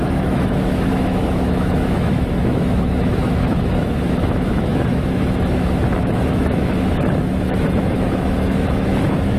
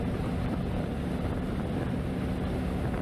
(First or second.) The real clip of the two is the second